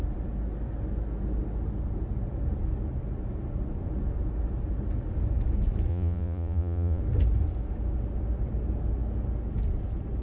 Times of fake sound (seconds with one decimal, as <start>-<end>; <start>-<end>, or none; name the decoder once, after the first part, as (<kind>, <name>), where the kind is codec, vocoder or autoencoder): 5.9-7.0 (vocoder, Vocos)